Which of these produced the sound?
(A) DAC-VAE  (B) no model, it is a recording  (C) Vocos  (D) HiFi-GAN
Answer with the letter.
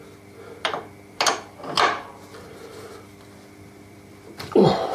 B